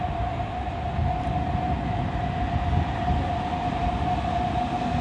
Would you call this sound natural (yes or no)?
yes